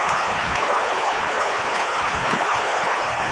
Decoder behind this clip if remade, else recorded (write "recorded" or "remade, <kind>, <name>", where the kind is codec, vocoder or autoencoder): remade, codec, HILCodec